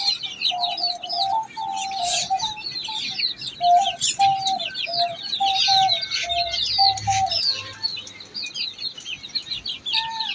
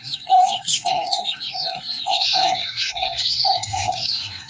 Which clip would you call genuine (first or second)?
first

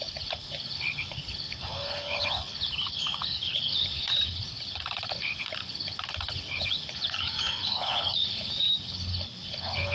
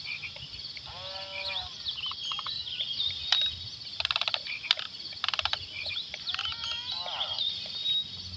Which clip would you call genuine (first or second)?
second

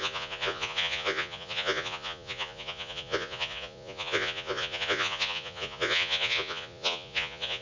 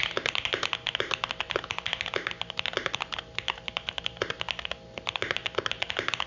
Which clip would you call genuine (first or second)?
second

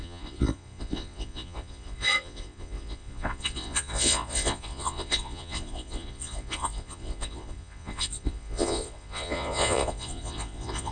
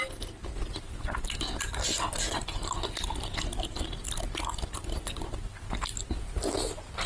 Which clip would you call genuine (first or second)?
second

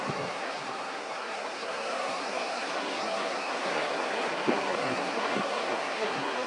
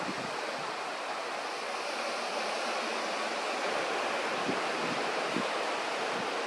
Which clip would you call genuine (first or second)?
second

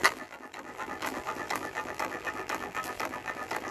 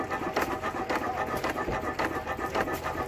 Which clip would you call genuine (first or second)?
second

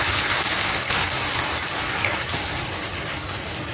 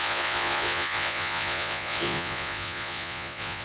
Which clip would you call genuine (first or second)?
first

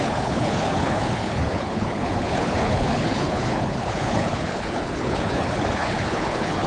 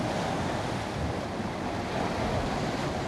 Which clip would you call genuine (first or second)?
second